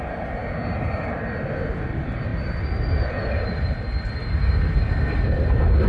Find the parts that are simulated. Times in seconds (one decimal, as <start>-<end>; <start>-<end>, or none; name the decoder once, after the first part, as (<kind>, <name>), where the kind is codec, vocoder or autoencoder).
2.3-5.9 (vocoder, BigVGAN v2)